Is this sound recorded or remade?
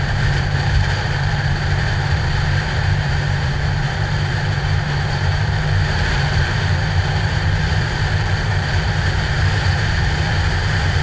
remade